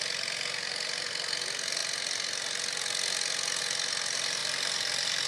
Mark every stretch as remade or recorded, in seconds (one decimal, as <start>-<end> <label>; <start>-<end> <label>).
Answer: 0.0-4.4 recorded; 4.4-5.3 remade